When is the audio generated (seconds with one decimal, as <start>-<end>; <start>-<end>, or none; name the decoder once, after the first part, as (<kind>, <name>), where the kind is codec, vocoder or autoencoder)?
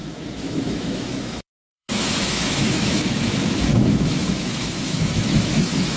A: 0.0-6.0 (autoencoder, DAC-VAE)